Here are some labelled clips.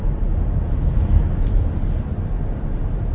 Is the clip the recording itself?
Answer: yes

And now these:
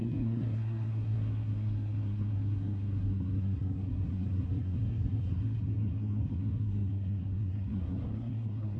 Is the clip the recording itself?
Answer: no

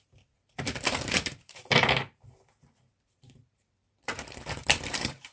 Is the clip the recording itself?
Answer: no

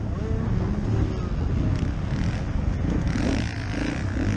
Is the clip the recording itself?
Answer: yes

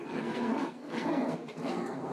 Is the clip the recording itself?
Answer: no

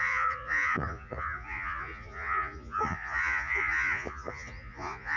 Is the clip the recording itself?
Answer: no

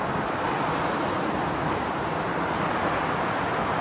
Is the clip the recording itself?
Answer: yes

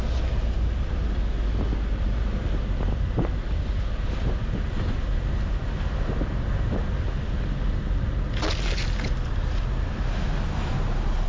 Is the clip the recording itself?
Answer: yes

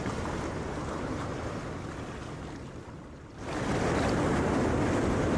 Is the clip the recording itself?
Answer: yes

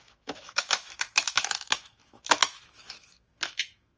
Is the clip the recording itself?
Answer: no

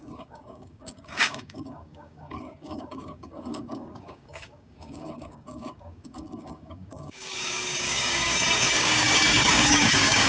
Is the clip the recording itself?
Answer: no